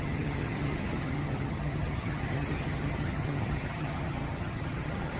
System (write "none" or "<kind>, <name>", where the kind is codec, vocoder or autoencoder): vocoder, HiFi-GAN